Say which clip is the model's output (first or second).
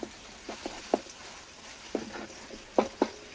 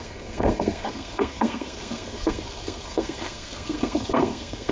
second